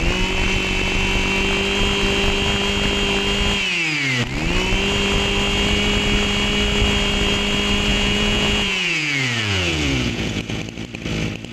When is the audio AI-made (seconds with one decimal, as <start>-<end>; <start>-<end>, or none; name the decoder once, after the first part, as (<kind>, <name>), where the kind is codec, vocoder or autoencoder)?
7.9-10.6 (vocoder, Vocos)